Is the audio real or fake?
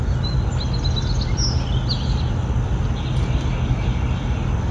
real